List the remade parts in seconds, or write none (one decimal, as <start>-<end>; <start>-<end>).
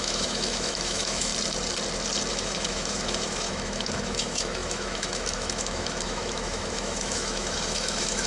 0.0-1.3; 2.3-8.3